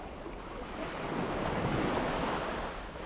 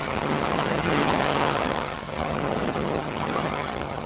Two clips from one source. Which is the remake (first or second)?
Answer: second